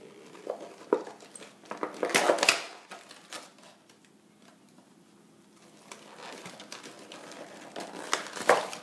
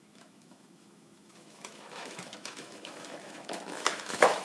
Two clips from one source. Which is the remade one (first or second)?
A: second